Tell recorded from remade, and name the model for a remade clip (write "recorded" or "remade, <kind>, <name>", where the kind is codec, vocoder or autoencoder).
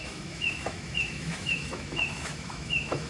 remade, autoencoder, DAC-VAE